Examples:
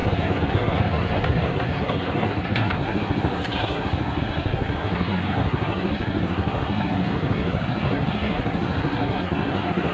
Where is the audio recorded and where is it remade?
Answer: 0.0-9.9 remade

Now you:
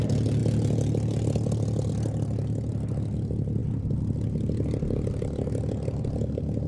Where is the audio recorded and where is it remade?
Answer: 0.0-6.7 recorded

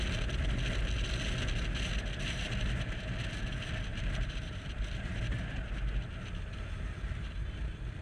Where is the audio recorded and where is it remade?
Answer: 0.0-3.9 recorded; 3.9-5.2 remade; 5.2-8.0 recorded

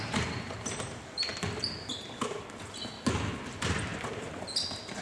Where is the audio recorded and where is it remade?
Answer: 0.0-1.3 remade; 1.3-3.5 recorded; 3.5-3.9 remade; 3.9-5.0 recorded

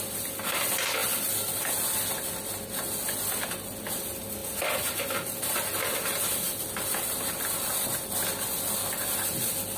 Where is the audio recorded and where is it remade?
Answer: 0.0-9.8 recorded